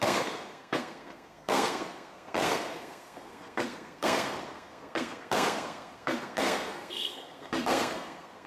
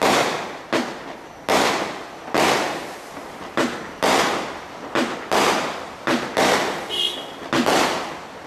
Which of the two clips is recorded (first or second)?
second